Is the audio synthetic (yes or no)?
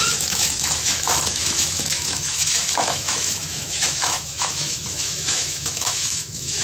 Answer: yes